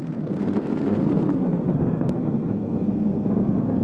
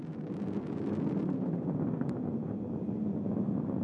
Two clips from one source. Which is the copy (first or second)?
first